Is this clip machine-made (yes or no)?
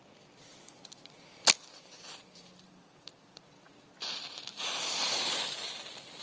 no